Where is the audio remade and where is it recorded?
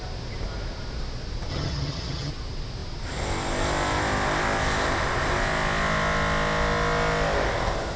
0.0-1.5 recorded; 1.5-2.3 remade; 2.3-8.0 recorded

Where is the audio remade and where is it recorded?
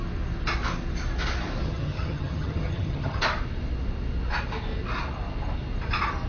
0.0-1.6 recorded; 1.6-3.2 remade; 3.2-6.3 recorded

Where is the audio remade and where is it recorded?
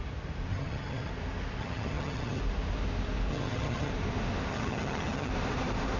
0.0-0.5 recorded; 0.5-1.1 remade; 1.1-1.6 recorded; 1.6-2.4 remade; 2.4-3.3 recorded; 3.3-3.9 remade; 3.9-4.5 recorded; 4.5-5.3 remade; 5.3-6.0 recorded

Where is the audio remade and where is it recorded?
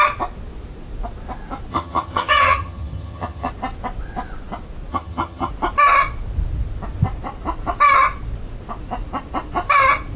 0.0-1.7 recorded; 1.7-3.5 remade; 3.5-4.9 recorded; 4.9-5.5 remade; 5.5-10.2 recorded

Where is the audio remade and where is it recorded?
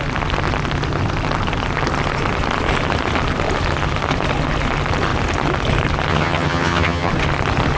0.0-6.1 recorded; 6.1-7.1 remade; 7.1-7.8 recorded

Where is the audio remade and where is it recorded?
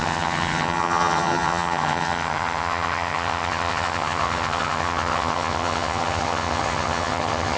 0.0-7.6 remade